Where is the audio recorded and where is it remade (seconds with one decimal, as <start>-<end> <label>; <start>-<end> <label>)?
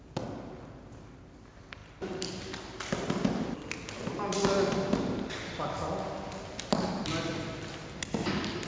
0.0-8.7 recorded